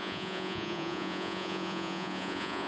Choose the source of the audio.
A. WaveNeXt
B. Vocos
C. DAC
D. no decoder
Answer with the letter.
B